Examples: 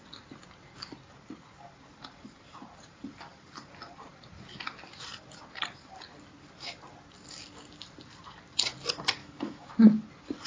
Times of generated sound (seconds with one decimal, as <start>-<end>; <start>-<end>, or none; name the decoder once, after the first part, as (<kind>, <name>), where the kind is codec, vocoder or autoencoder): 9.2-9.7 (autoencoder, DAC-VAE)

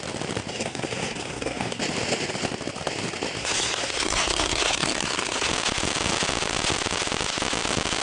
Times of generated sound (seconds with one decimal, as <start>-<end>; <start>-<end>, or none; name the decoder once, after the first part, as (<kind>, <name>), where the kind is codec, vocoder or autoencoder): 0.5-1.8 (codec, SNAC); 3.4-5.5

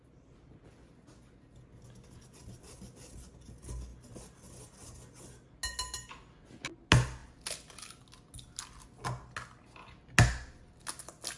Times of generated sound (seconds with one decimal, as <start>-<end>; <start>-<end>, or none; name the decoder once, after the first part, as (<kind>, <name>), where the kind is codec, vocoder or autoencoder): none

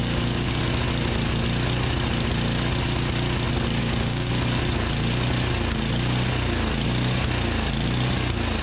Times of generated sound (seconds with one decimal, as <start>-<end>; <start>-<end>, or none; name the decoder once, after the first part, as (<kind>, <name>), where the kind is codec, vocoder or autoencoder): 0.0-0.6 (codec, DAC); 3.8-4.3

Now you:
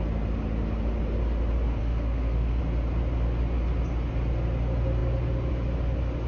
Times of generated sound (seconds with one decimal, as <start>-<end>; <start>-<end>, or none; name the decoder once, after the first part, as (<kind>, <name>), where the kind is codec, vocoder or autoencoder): 1.8-2.6 (codec, SNAC)